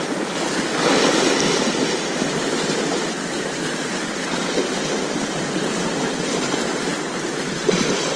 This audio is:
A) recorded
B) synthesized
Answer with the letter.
A